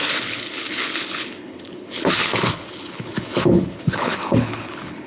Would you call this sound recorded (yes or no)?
no